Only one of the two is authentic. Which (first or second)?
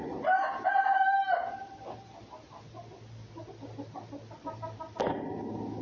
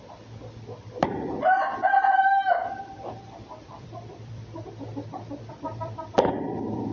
first